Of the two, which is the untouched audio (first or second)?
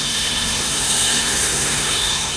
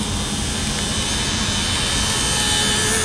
second